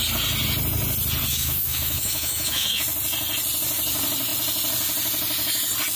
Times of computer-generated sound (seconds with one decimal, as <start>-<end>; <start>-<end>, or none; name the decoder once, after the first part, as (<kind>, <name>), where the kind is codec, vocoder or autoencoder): 1.3-2.8 (autoencoder, DAC-VAE)